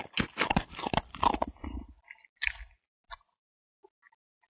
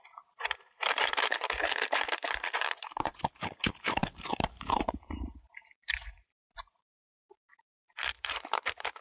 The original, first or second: first